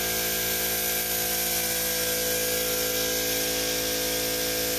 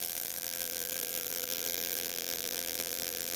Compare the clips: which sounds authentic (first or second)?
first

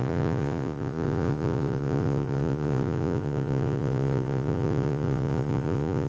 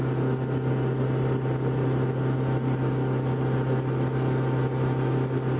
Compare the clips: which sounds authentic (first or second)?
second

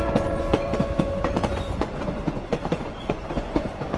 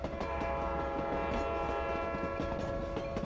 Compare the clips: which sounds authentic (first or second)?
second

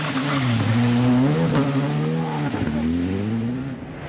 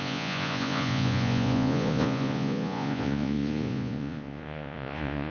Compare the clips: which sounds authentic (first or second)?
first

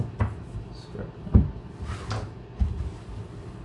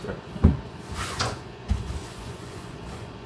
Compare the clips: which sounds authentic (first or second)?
first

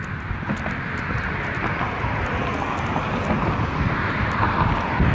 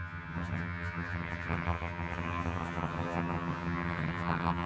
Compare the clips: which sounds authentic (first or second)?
first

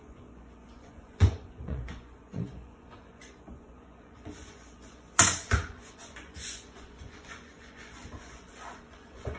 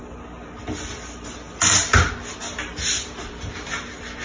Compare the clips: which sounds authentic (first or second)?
second